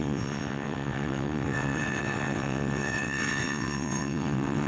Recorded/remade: remade